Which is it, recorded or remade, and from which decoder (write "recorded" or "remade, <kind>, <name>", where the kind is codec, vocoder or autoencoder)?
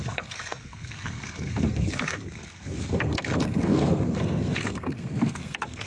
remade, codec, SNAC